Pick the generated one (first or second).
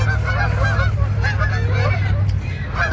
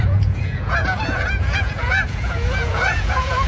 second